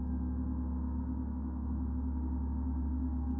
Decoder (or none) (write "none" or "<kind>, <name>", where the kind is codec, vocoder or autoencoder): none